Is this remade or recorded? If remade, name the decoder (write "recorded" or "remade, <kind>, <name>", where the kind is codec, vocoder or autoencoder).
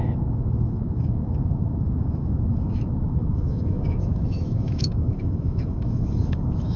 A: remade, autoencoder, DAC-VAE